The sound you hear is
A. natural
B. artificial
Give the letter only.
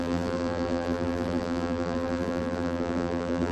B